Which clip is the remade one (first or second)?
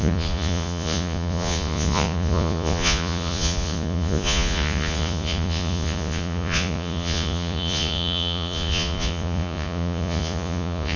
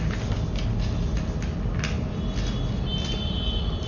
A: first